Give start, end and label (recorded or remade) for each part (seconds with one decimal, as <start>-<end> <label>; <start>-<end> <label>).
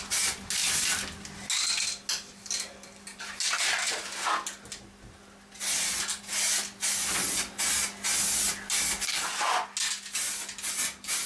0.0-11.3 recorded